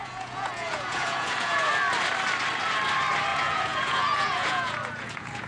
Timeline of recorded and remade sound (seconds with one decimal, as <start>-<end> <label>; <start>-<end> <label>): 0.0-1.7 remade; 1.7-3.3 recorded; 3.3-5.5 remade